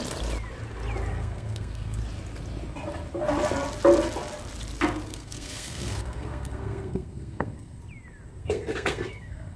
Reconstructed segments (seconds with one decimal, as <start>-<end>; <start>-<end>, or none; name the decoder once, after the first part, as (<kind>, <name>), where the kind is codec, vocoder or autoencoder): 1.1-2.0 (codec, SNAC); 5.1-7.8; 8.4-9.6